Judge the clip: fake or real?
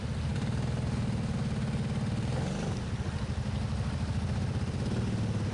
real